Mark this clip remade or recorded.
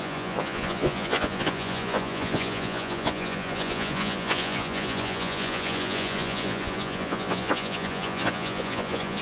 remade